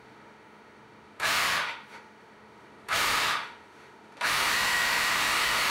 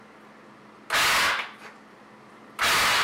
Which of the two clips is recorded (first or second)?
second